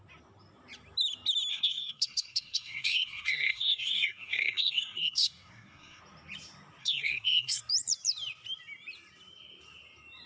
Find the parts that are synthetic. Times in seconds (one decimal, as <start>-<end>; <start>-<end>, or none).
1.5-6.0; 6.8-7.6